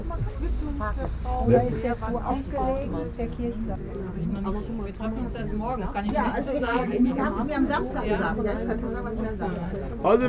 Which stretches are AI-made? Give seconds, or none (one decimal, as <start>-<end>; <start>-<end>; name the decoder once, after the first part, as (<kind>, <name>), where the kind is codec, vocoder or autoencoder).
6.6-7.2 (vocoder, BigVGAN v2)